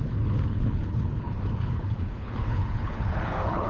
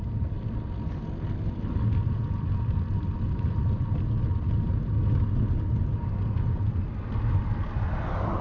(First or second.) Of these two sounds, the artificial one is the first